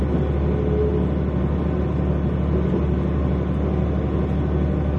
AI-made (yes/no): no